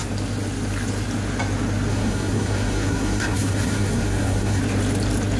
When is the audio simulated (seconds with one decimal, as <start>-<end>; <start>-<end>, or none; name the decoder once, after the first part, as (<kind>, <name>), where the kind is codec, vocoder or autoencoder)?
1.9-4.6 (codec, SNAC)